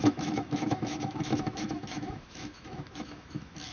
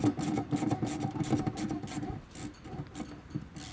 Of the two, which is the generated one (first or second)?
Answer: first